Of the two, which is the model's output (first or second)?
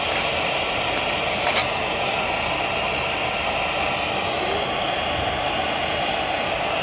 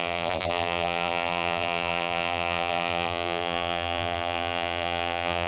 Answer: second